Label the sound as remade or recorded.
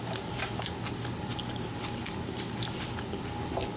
recorded